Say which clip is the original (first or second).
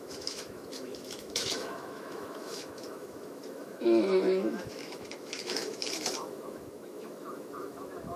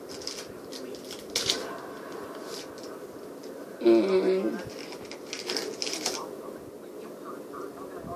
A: second